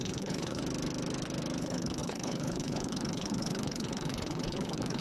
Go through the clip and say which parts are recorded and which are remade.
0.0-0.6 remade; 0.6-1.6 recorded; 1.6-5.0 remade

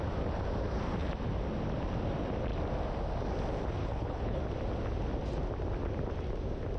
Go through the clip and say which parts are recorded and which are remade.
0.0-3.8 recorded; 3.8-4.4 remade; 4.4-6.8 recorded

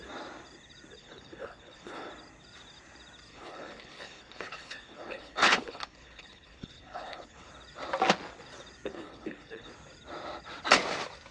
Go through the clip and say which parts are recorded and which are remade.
0.0-1.0 recorded; 1.0-2.1 remade; 2.1-3.3 recorded; 3.3-7.5 remade; 7.5-8.9 recorded; 8.9-9.7 remade; 9.7-11.3 recorded

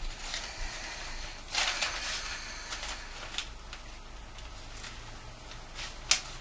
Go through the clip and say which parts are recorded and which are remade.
0.0-6.4 recorded

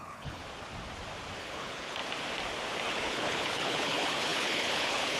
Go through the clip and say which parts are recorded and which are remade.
0.0-0.4 remade; 0.4-1.4 recorded; 1.4-2.0 remade; 2.0-2.9 recorded; 2.9-5.2 remade

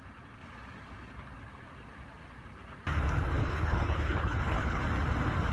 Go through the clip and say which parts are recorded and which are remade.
0.0-3.4 recorded; 3.4-4.8 remade; 4.8-5.5 recorded

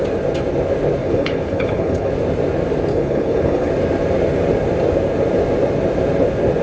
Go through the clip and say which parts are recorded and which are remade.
0.0-1.0 recorded; 1.0-2.1 remade; 2.1-2.9 recorded; 2.9-3.7 remade; 3.7-6.6 recorded

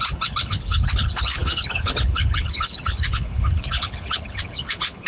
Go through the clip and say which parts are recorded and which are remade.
0.0-5.1 remade